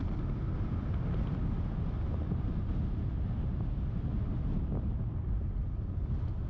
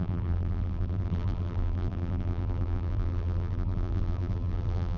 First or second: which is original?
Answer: first